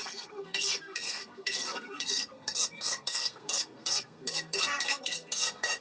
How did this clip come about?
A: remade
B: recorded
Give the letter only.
A